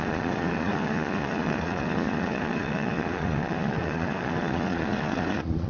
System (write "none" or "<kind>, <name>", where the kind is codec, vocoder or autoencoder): vocoder, Vocos